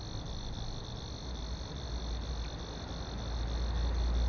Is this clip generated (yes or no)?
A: no